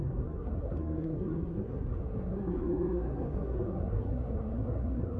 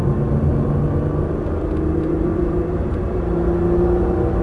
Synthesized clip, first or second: first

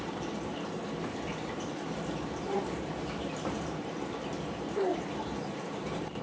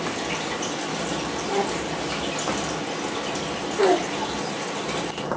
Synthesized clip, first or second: first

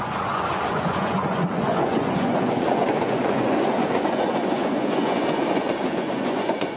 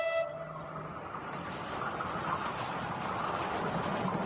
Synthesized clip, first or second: first